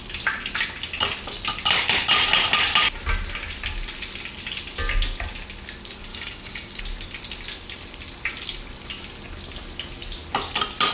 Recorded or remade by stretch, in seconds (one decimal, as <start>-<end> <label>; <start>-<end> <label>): 0.0-6.1 recorded; 6.1-6.8 remade; 6.8-10.9 recorded